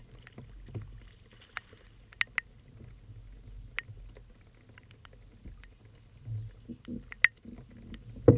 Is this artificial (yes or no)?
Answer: no